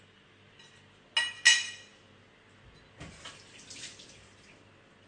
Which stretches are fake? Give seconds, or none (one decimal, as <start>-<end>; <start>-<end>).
none